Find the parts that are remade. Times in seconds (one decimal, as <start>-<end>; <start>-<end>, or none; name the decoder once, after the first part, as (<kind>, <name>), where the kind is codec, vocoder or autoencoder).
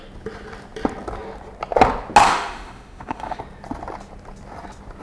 2.2-3.4 (autoencoder, DAC-VAE)